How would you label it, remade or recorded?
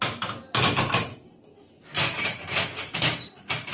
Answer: recorded